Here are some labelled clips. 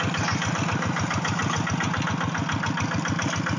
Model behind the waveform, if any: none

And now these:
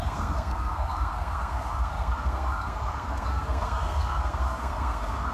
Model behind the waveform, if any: codec, SNAC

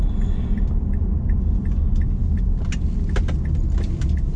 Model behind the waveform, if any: none